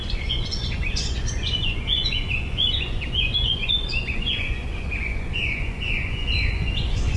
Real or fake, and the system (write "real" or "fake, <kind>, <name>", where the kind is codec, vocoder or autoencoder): fake, vocoder, Vocos